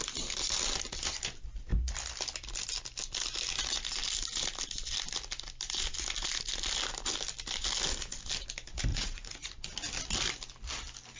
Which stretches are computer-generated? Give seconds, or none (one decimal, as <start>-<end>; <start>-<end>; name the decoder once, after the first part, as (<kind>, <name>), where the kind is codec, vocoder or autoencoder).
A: 8.9-9.7 (vocoder, Vocos)